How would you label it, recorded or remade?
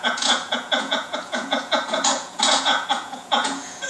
remade